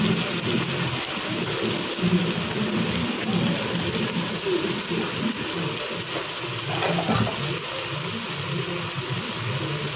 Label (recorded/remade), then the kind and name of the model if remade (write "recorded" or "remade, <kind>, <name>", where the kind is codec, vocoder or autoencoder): recorded